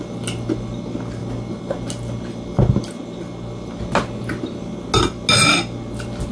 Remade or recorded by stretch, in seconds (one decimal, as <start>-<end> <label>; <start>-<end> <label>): 0.0-6.3 recorded